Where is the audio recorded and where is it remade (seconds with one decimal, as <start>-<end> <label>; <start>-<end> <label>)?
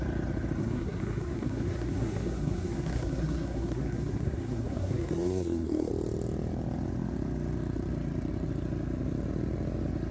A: 0.0-0.6 recorded; 0.6-5.9 remade; 5.9-10.1 recorded